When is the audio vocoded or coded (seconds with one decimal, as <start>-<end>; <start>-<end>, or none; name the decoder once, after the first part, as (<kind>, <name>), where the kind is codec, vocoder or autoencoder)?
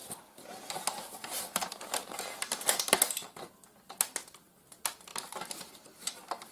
none